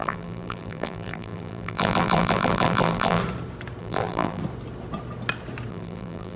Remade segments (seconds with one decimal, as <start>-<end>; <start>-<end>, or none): 0.0-3.2; 3.8-4.4; 5.7-6.4